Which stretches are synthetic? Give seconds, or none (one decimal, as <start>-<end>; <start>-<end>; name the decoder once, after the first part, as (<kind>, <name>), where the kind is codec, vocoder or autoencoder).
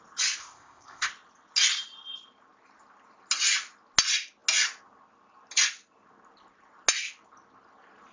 0.4-1.1 (codec, ZipCodec)